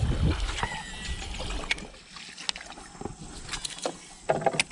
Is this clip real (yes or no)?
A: yes